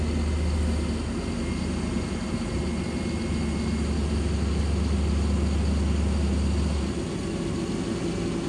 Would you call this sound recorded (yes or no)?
yes